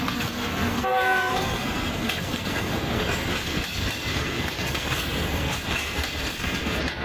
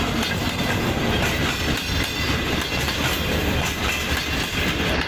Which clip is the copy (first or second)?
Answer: first